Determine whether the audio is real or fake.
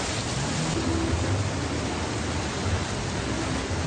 real